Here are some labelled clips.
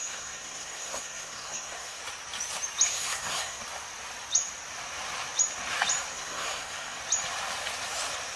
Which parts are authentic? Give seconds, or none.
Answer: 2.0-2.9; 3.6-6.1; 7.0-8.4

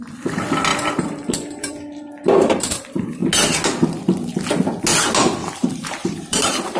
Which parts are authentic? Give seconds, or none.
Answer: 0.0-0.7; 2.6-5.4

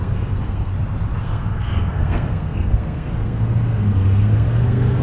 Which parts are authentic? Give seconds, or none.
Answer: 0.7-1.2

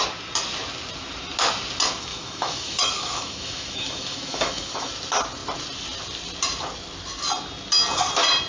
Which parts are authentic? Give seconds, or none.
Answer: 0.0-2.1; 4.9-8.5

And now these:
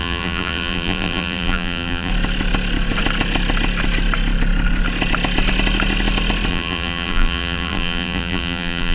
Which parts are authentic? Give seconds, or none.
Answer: 2.1-6.5

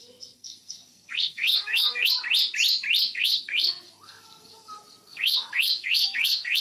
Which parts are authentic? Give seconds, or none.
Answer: 2.1-3.0

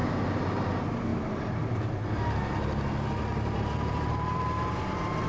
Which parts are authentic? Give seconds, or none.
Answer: 0.7-1.1; 1.8-3.3; 4.4-5.3